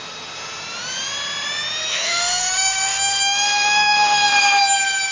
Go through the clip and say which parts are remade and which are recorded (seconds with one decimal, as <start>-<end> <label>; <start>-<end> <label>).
0.0-1.9 recorded; 1.9-4.6 remade; 4.6-5.1 recorded